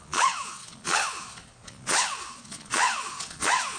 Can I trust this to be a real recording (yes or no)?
no